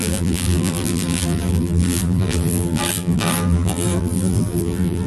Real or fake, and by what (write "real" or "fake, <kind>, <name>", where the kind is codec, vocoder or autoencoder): fake, vocoder, BigVGAN v2